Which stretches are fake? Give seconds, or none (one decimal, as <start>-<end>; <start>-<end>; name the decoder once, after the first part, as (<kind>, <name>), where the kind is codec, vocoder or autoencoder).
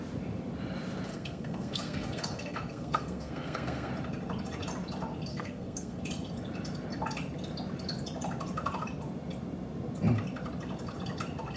1.1-3.9 (codec, SNAC); 5.3-6.0